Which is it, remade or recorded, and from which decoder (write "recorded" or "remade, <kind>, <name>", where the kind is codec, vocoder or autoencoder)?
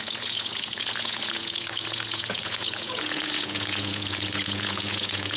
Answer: remade, vocoder, Vocos